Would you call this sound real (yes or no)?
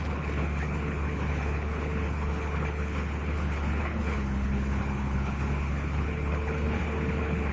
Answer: no